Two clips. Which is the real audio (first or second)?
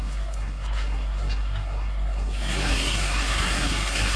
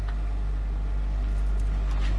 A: second